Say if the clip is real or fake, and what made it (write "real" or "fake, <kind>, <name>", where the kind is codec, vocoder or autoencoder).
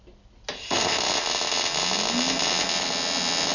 real